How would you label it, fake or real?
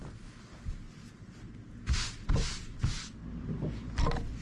real